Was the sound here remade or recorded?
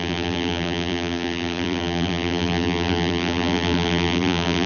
remade